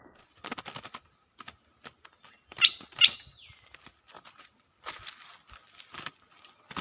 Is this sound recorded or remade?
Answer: recorded